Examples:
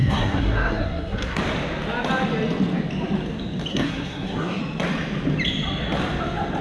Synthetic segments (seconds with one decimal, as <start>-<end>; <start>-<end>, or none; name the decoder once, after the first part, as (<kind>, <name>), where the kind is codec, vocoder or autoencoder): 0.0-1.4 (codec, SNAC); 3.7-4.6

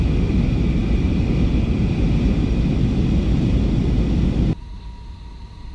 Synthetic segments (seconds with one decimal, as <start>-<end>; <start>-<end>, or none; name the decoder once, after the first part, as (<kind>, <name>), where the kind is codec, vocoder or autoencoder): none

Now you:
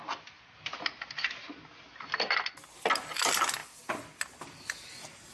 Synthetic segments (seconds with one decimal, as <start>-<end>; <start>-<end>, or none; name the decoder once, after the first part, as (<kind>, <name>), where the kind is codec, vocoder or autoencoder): none

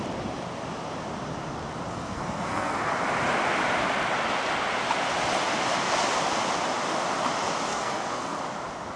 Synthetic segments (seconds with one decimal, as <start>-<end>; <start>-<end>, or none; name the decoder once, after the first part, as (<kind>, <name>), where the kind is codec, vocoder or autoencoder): 1.9-2.9 (codec, SNAC); 7.7-8.4

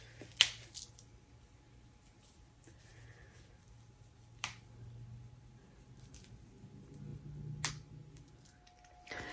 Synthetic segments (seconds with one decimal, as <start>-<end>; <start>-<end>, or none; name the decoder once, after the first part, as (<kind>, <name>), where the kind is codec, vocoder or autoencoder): none

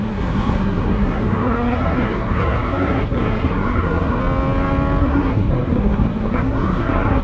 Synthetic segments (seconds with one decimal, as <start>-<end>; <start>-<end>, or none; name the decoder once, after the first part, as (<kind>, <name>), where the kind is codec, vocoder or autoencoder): 0.0-4.2 (codec, SNAC); 5.0-7.2

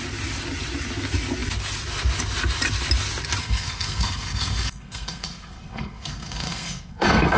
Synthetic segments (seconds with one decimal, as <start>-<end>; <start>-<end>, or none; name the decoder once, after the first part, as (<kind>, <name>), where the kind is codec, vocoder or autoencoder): 3.4-7.4 (codec, SNAC)